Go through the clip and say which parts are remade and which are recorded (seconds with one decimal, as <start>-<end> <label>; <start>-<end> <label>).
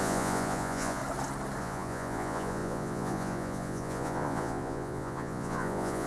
0.0-1.0 remade; 1.0-1.6 recorded; 1.6-6.1 remade